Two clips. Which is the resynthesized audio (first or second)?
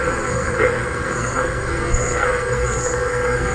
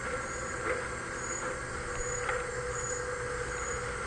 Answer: first